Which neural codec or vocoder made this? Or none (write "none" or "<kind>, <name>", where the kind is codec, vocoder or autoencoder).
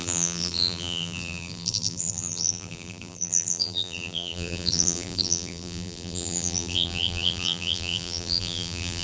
vocoder, BigVGAN v2